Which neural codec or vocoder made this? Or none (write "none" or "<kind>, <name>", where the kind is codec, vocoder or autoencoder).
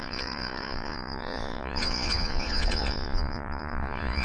vocoder, Vocos